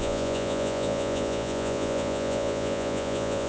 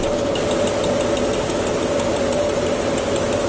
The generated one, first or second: first